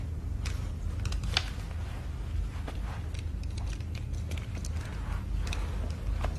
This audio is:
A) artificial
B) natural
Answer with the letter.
B